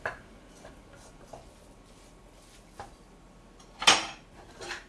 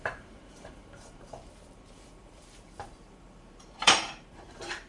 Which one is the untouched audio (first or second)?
first